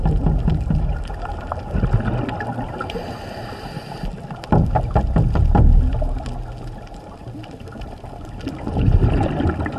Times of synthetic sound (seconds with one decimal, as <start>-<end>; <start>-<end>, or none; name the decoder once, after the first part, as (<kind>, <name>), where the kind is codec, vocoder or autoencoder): 7.2-8.0 (vocoder, BigVGAN v2)